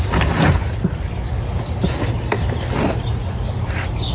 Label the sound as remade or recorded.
recorded